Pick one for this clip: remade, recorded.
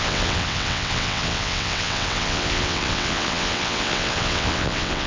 remade